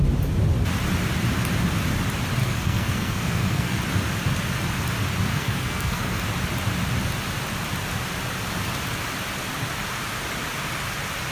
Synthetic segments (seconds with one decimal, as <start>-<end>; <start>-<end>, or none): 2.4-3.8; 5.3-6.2